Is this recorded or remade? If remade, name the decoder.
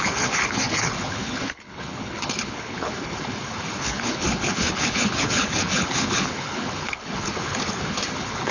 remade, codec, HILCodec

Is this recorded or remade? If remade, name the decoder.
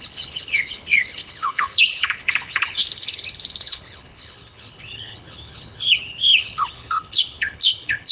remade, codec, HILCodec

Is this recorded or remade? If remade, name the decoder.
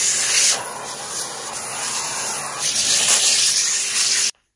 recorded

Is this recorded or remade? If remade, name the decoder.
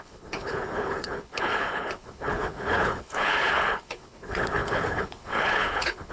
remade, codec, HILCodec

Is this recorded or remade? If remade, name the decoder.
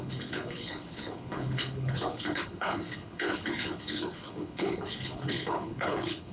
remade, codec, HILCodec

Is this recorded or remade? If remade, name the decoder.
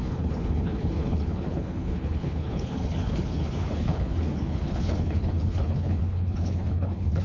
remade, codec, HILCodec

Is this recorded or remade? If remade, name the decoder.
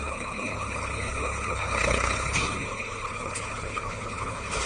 remade, codec, HILCodec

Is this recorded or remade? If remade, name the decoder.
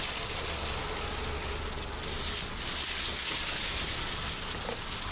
recorded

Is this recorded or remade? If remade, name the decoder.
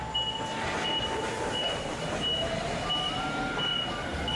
recorded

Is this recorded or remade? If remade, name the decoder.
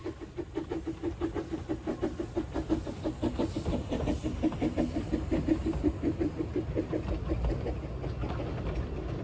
recorded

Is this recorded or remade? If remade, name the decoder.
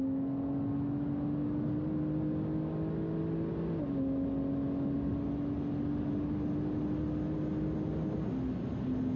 recorded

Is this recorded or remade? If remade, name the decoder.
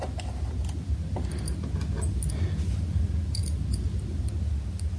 recorded